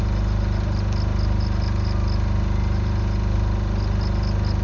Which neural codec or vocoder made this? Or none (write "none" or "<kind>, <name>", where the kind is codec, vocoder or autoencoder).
none